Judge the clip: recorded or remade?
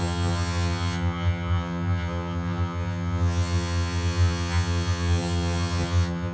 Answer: remade